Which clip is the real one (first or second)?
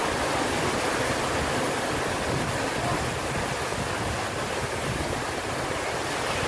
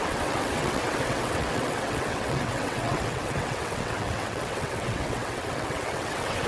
first